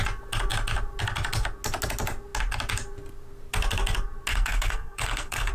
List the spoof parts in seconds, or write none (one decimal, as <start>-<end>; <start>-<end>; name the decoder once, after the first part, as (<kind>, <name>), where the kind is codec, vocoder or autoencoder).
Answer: 4.3-5.5 (codec, SNAC)